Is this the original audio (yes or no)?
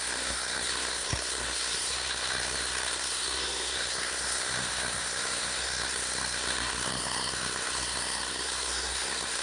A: no